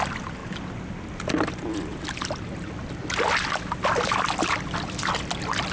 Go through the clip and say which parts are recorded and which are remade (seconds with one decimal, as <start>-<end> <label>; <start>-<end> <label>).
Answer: 0.0-5.7 recorded